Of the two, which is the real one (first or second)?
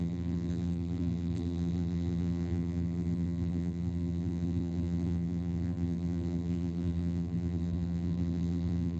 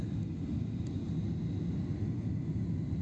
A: second